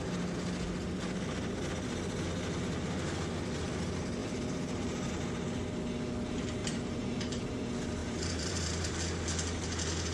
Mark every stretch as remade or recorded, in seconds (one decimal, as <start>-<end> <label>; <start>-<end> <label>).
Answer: 0.0-4.2 recorded; 4.2-5.1 remade; 5.1-6.6 recorded; 6.6-7.5 remade; 7.5-8.0 recorded; 8.0-8.9 remade; 8.9-10.1 recorded

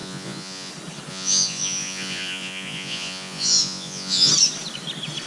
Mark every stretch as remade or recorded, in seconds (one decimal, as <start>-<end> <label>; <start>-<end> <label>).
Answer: 0.0-0.7 remade; 0.7-1.1 recorded; 1.1-4.3 remade; 4.3-5.3 recorded

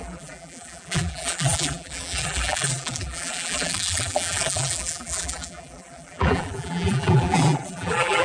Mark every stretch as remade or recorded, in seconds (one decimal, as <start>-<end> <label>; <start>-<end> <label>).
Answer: 0.0-8.2 remade

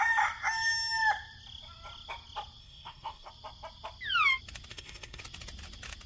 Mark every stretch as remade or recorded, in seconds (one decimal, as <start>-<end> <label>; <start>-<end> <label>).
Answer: 0.0-2.6 recorded; 2.6-3.3 remade; 3.3-4.7 recorded; 4.7-5.2 remade; 5.2-6.1 recorded

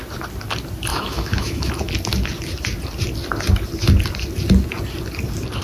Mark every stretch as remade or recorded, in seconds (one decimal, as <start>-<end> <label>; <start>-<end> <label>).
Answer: 0.0-0.9 recorded; 0.9-1.7 remade; 1.7-5.6 recorded

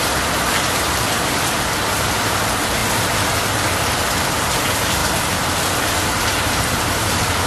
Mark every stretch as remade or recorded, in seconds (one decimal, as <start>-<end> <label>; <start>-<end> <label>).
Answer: 0.0-5.0 remade; 5.0-6.2 recorded; 6.2-7.5 remade

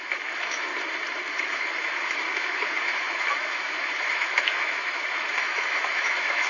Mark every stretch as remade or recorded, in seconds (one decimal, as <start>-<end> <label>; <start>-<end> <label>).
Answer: 0.0-0.7 remade; 0.7-1.4 recorded; 1.4-6.5 remade